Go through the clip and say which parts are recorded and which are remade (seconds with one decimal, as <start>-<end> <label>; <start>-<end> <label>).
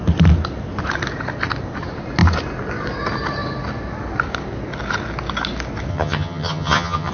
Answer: 0.0-5.9 recorded; 5.9-7.1 remade